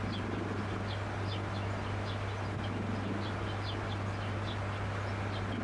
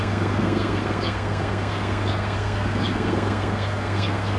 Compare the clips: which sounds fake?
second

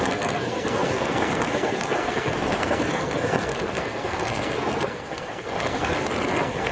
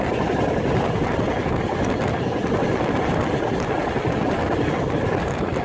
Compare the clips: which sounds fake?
first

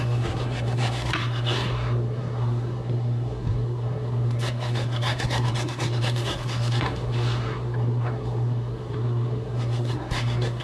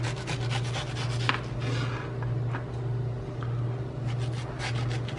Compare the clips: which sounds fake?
first